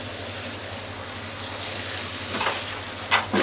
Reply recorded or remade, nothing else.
recorded